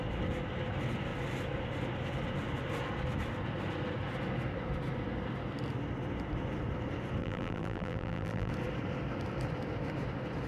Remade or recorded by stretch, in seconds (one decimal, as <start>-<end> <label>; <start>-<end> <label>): 0.0-7.2 recorded; 7.2-8.5 remade; 8.5-10.5 recorded